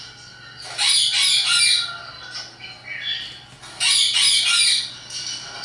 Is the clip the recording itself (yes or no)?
yes